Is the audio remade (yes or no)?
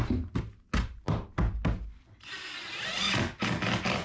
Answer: no